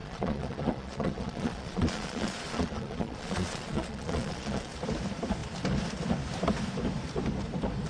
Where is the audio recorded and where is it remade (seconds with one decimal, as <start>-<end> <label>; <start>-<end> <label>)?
0.0-4.7 remade; 4.7-7.9 recorded